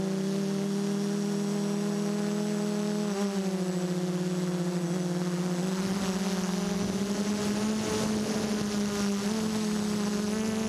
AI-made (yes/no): no